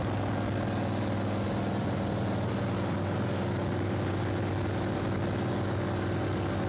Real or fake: real